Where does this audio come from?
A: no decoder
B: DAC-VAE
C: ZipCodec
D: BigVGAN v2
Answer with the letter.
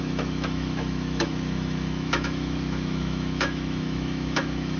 B